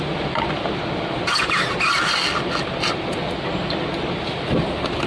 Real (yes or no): yes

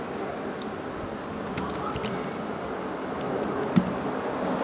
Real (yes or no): yes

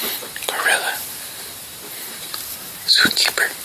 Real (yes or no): no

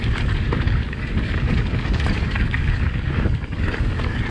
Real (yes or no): no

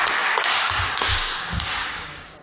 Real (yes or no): no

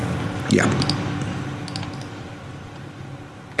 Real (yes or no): yes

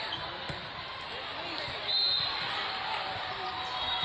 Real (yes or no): yes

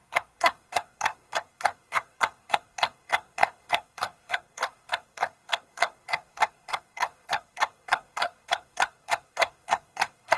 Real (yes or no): no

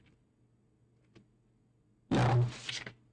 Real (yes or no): yes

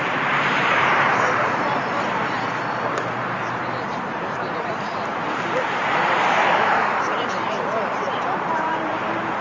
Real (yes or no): no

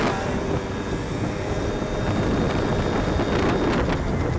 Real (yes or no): yes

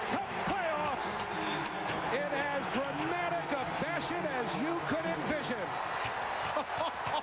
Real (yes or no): yes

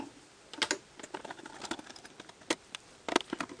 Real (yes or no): yes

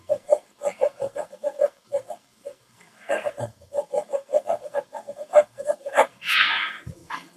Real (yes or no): no